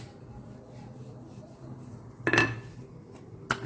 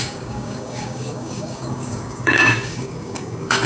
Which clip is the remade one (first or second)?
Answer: second